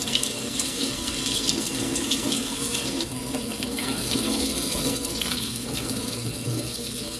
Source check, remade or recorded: remade